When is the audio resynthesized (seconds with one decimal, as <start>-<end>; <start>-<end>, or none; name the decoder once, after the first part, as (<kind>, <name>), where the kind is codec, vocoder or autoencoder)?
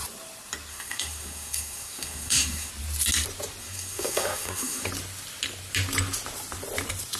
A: 0.7-2.7 (codec, SNAC); 3.6-4.9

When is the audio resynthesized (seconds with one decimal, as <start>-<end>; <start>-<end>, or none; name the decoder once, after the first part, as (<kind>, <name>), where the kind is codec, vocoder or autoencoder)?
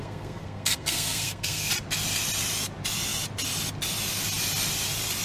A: 0.0-1.7 (codec, SNAC)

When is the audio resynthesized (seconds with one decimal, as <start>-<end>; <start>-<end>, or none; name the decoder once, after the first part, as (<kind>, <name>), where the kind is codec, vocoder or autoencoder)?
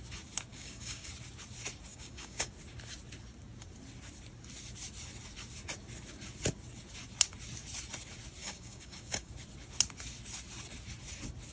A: 0.5-1.1 (codec, DAC); 1.9-2.5; 8.4-9.3